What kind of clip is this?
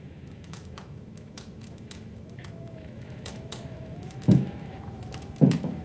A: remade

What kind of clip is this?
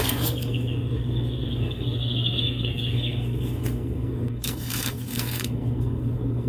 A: remade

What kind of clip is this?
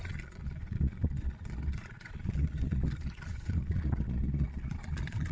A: remade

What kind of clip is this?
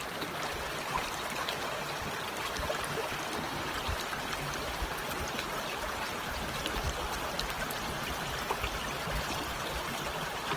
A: remade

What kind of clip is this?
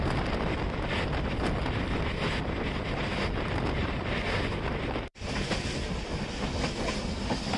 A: remade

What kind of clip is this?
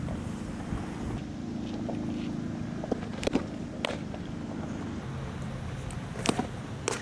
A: recorded